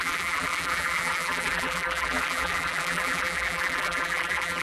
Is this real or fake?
fake